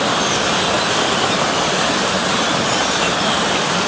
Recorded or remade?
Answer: recorded